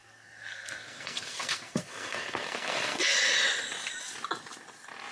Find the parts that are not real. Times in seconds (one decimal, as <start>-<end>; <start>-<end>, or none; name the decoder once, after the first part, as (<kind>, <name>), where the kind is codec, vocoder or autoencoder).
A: 0.0-3.1 (codec, SNAC)